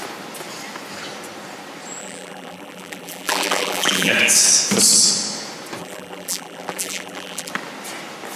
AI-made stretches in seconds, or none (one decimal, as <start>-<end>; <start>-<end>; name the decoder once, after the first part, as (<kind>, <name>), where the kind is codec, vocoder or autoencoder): 2.0-4.1 (vocoder, BigVGAN v2); 5.8-7.5